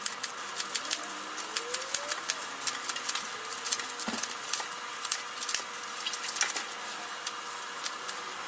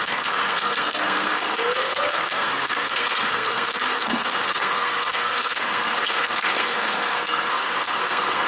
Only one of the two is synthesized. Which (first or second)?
second